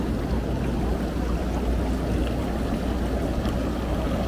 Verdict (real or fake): real